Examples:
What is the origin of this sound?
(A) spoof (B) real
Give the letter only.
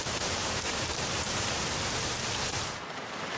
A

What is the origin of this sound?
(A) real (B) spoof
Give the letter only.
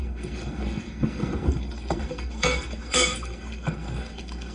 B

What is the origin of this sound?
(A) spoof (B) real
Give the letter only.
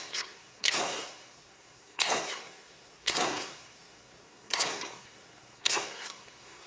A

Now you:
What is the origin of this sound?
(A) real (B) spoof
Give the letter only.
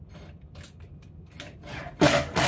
A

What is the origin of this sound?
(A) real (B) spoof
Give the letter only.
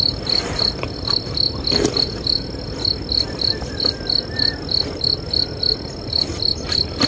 A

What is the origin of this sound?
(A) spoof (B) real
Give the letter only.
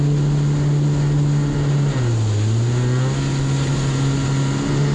B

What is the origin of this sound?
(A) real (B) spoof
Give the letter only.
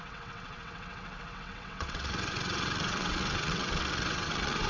B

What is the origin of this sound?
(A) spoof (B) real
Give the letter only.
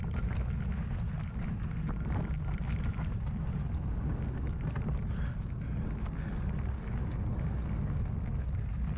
B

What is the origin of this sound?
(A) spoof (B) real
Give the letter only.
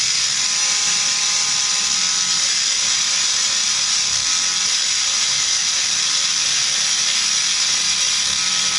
B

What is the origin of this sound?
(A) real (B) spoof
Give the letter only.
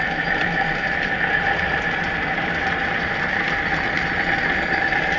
A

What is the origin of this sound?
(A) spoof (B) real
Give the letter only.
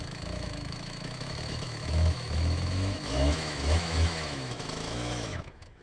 A